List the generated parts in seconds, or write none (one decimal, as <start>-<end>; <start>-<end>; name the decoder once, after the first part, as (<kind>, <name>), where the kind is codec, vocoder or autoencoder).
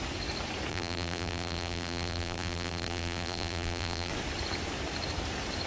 0.7-4.1 (vocoder, BigVGAN v2)